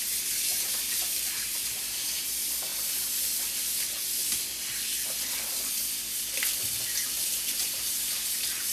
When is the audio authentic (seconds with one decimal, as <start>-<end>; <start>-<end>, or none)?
0.0-0.5; 2.2-7.6